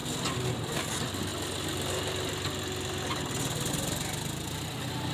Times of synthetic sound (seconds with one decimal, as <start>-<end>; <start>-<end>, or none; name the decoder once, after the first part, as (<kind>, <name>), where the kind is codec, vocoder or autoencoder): 0.0-1.3 (vocoder, BigVGAN v2); 3.7-5.1